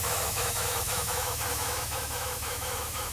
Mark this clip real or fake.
fake